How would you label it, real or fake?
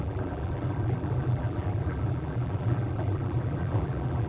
fake